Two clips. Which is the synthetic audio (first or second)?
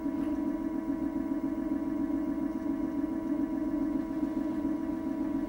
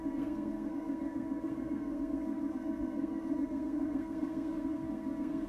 second